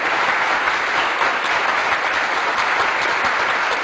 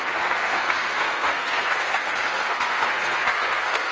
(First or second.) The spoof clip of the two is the second